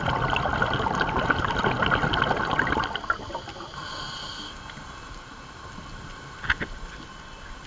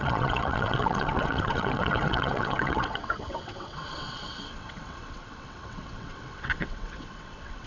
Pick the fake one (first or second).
second